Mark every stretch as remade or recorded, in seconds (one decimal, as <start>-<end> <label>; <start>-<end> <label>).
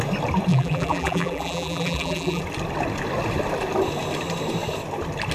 0.0-0.5 recorded; 0.5-2.4 remade; 2.4-5.3 recorded